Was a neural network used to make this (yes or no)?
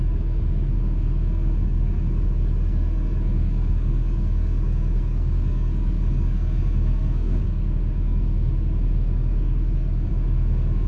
yes